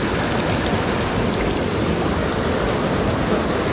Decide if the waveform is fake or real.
real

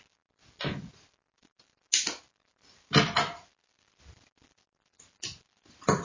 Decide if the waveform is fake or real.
real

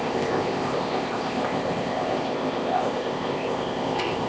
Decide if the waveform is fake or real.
fake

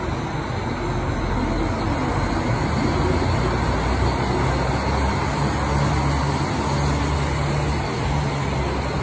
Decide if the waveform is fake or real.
real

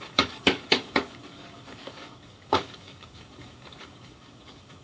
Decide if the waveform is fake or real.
fake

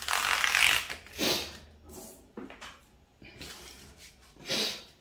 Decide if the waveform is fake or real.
real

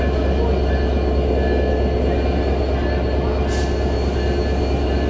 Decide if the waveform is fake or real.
real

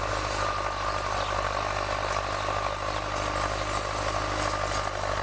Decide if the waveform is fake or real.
real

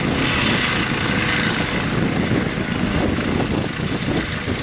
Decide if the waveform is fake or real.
real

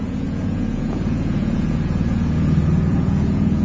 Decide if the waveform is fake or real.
fake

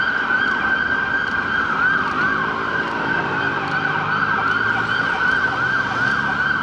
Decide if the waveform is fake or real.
real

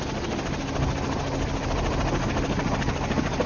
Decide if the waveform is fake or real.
real